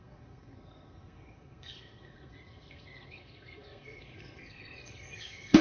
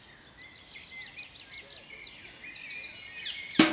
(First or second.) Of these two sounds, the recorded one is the second